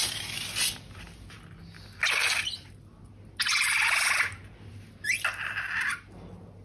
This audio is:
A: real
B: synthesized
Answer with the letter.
A